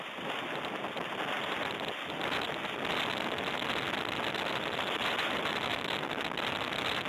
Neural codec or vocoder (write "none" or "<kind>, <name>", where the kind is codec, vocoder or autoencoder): none